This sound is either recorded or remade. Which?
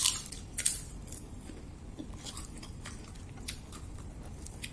remade